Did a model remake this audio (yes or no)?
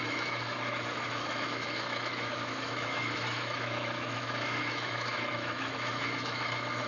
yes